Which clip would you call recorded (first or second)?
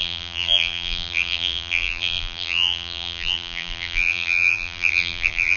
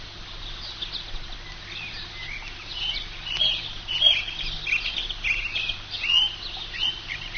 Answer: second